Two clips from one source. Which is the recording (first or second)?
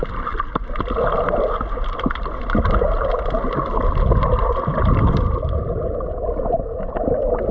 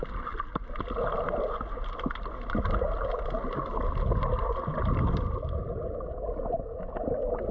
second